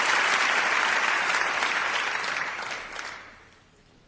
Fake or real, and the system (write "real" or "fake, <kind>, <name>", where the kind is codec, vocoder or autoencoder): fake, vocoder, BigVGAN v2